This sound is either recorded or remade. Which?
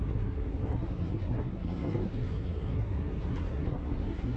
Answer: remade